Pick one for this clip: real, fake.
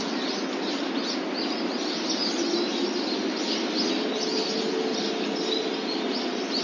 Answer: real